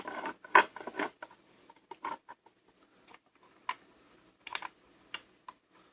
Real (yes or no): yes